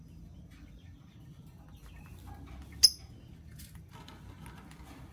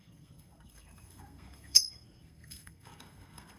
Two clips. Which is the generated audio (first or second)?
second